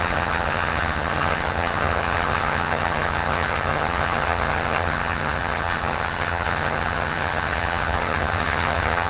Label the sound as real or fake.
fake